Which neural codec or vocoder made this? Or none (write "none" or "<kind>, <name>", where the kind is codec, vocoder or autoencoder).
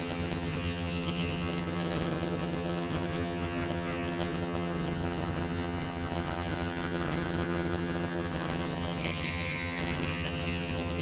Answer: vocoder, HiFi-GAN